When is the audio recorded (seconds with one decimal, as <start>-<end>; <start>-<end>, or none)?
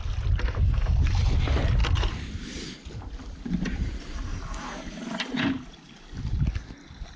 0.0-4.3; 5.0-7.2